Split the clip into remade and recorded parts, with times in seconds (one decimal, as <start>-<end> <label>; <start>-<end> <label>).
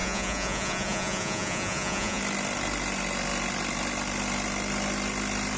0.0-2.2 remade; 2.2-5.6 recorded